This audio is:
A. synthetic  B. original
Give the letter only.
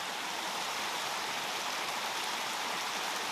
B